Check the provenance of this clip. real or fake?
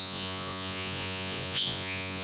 fake